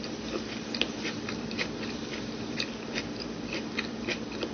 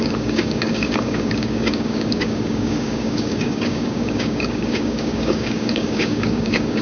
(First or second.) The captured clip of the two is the first